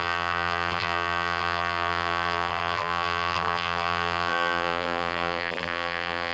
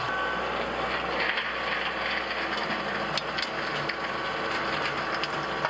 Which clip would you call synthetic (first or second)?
first